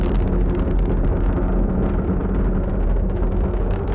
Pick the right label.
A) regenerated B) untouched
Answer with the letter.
B